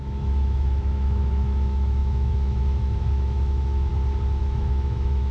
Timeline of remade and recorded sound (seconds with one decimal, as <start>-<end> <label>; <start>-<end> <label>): 0.0-3.9 remade; 3.9-4.4 recorded; 4.4-5.3 remade